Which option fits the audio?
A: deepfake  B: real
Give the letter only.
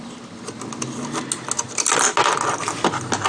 B